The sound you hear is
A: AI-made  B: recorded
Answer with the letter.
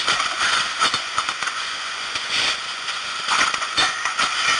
A